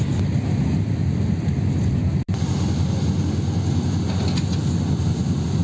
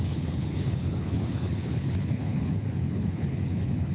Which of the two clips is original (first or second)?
first